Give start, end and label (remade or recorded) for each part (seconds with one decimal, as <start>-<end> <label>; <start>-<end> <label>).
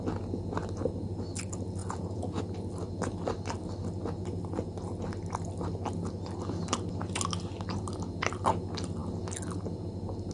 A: 0.0-1.8 recorded; 1.8-2.4 remade; 2.4-10.3 recorded